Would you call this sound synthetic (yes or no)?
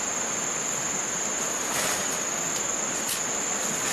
no